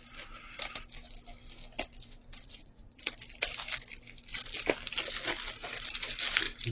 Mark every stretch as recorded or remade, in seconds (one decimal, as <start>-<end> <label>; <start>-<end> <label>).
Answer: 0.0-2.4 recorded; 2.4-3.0 remade; 3.0-6.7 recorded